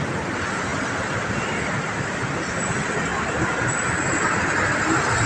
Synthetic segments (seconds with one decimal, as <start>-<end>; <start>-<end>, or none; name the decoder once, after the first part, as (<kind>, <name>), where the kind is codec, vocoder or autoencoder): none